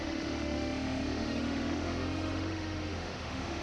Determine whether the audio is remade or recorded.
remade